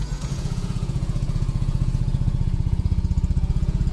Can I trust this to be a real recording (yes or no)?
no